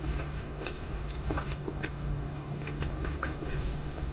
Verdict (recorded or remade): remade